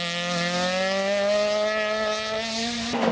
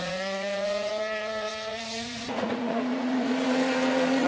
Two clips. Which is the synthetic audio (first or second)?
second